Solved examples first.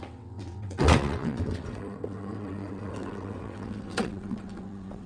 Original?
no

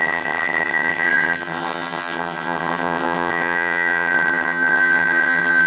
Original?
no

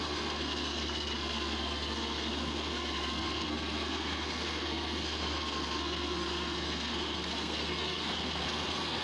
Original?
no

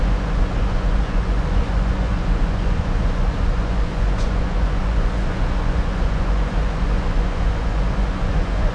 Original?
no